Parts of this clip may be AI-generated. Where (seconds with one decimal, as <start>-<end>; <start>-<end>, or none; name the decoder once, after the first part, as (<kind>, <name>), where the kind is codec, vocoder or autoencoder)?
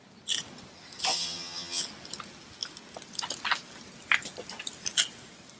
1.1-1.8 (vocoder, HiFi-GAN)